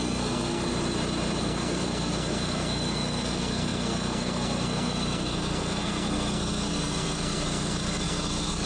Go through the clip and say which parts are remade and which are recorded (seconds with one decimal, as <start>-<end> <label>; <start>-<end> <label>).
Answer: 0.0-0.6 remade; 0.6-1.4 recorded; 1.4-8.7 remade